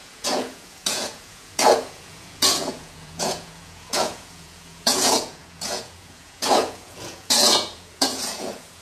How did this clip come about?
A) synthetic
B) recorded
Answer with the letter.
A